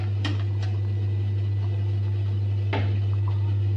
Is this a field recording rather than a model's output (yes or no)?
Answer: yes